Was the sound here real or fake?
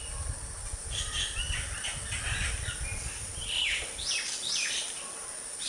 real